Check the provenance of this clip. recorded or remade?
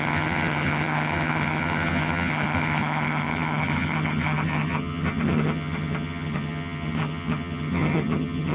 remade